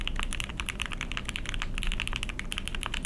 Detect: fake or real real